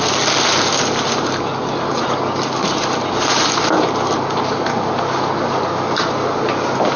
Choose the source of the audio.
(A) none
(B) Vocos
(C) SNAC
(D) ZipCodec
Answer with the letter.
A